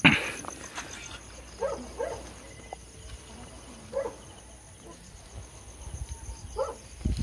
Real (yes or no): yes